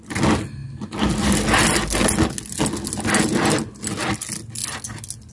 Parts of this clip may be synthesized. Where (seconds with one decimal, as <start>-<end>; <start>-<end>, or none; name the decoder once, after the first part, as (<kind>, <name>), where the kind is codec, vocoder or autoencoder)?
none